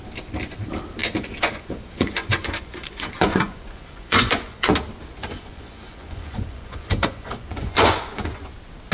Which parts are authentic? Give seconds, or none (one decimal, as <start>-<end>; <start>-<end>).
0.0-1.0; 4.7-5.2; 8.4-8.9